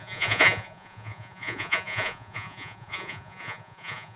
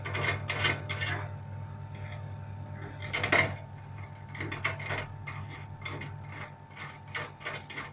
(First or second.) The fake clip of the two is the first